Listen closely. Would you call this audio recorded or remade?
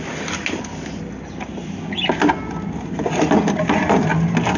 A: recorded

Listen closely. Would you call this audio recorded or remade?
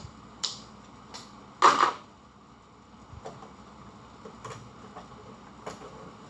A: recorded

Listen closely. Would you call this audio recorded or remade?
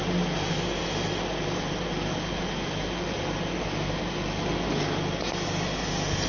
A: recorded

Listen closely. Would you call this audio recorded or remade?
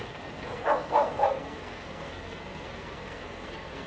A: remade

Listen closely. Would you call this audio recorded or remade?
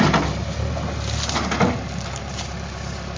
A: recorded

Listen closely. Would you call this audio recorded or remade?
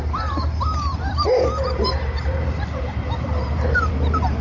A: remade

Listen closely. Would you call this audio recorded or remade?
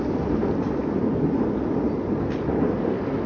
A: recorded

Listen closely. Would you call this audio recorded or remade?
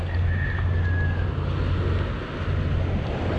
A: recorded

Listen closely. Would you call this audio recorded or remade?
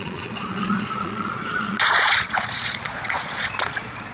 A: remade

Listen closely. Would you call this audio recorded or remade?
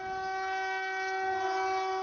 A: recorded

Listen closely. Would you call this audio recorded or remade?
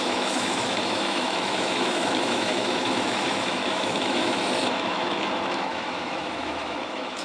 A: remade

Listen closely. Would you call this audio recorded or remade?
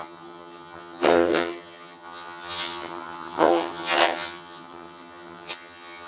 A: remade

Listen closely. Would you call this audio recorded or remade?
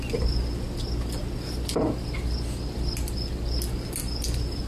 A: recorded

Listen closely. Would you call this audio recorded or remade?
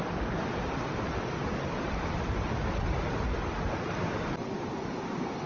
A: recorded